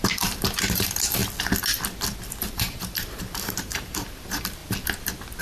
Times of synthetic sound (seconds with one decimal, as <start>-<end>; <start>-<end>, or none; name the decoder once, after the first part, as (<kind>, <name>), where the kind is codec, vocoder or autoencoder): 0.0-1.2 (vocoder, BigVGAN v2); 2.4-4.6